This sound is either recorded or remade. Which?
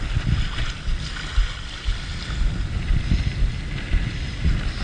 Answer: recorded